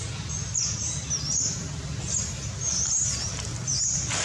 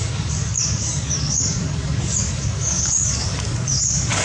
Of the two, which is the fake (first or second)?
second